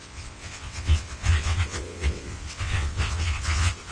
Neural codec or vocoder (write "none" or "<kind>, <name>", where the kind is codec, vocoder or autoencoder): vocoder, WaveNeXt